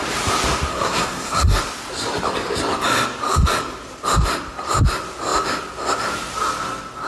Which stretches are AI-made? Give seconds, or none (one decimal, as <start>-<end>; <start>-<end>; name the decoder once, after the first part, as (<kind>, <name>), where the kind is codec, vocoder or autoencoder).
0.7-1.6 (codec, SNAC)